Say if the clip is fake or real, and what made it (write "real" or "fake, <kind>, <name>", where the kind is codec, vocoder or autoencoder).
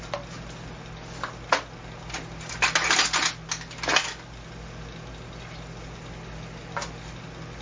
real